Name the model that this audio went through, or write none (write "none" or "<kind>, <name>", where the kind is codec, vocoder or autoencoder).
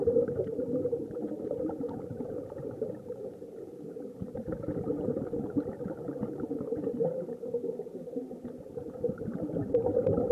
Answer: vocoder, BigVGAN v2